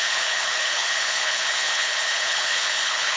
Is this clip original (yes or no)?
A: no